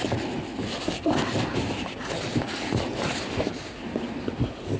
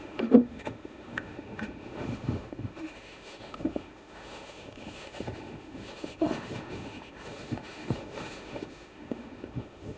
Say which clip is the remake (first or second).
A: second